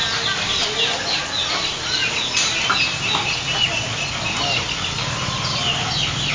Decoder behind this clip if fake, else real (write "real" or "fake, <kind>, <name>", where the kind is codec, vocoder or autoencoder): real